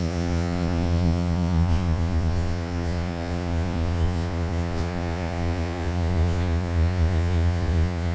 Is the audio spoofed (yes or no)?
yes